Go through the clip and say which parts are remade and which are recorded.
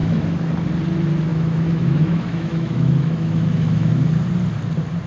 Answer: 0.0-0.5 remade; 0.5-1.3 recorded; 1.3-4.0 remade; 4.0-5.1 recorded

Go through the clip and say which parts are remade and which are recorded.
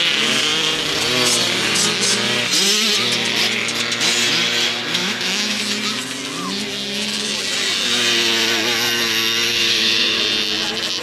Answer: 0.0-5.0 recorded; 5.0-5.6 remade; 5.6-9.6 recorded; 9.6-10.2 remade; 10.2-11.0 recorded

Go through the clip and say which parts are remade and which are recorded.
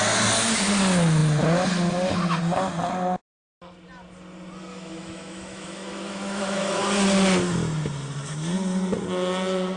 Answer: 0.0-4.7 recorded; 4.7-6.8 remade; 6.8-9.8 recorded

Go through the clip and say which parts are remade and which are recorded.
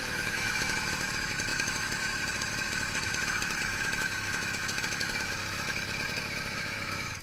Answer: 0.0-7.2 remade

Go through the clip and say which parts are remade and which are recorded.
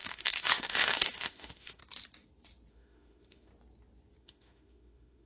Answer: 0.0-1.8 remade; 1.8-2.7 recorded; 2.7-3.5 remade; 3.5-4.2 recorded; 4.2-5.3 remade